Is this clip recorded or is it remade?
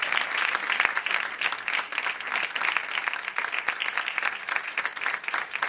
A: recorded